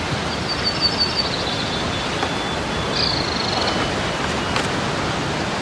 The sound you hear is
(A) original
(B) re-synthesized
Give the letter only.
A